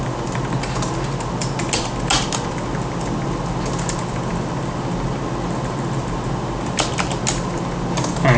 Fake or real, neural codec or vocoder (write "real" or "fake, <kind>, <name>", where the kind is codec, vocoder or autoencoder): real